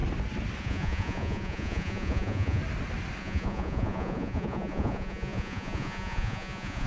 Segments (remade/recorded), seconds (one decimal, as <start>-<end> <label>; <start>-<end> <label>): 0.0-0.6 recorded; 0.6-2.6 remade; 2.6-3.2 recorded; 3.2-6.9 remade

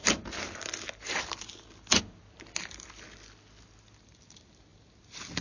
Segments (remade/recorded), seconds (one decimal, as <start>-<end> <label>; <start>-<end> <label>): 0.0-5.4 recorded